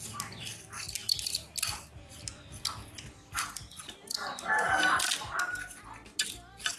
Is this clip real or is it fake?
real